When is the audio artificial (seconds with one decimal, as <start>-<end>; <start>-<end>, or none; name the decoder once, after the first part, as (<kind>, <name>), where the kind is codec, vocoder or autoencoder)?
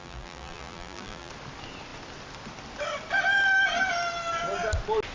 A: 0.0-1.3 (vocoder, BigVGAN v2)